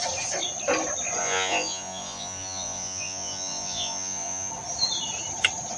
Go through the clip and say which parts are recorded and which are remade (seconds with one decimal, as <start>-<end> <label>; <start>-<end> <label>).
0.0-1.2 recorded; 1.2-4.5 remade; 4.5-5.8 recorded